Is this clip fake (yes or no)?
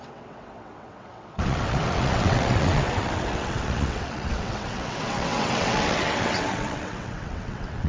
yes